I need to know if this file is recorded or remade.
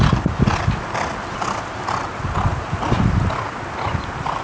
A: recorded